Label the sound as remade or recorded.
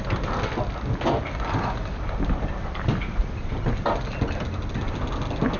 recorded